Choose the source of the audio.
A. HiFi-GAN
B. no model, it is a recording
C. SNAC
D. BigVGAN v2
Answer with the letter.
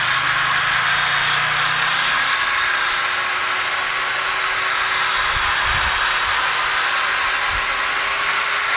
B